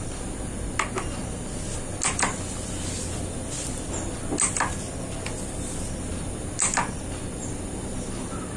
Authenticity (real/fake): real